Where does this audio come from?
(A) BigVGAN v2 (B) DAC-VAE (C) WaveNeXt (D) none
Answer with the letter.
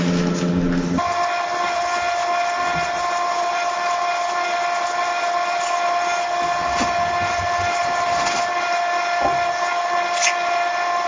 D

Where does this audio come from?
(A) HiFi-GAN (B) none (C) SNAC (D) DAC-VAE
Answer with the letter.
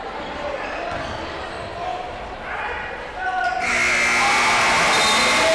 B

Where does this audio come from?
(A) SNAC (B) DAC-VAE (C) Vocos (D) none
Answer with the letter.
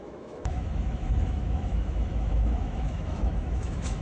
B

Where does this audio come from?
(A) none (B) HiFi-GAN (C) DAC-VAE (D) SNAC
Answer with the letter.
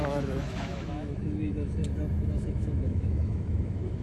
C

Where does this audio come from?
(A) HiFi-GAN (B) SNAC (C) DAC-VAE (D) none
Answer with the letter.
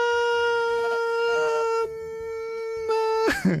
C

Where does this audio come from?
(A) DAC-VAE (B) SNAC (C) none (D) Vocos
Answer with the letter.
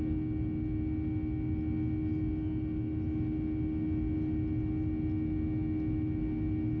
C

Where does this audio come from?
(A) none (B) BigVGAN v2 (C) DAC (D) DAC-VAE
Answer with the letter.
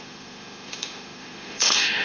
D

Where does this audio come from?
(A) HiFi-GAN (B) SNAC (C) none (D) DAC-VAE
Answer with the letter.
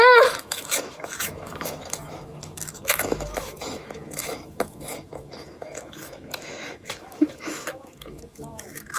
D